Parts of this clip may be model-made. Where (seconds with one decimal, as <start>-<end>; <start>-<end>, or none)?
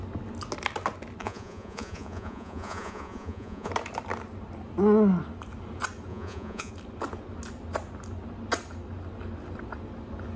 1.2-3.7; 6.1-6.7